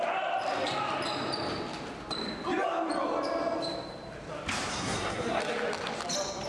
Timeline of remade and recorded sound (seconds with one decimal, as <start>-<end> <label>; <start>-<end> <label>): 0.0-4.7 recorded; 4.7-5.4 remade; 5.4-6.5 recorded